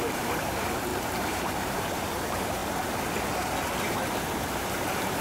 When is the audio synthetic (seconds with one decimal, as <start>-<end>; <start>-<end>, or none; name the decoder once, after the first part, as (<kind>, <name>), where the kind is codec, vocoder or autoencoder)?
0.0-2.6 (vocoder, BigVGAN v2); 4.7-5.2